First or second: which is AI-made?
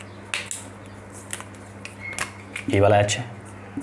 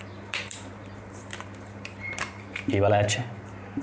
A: second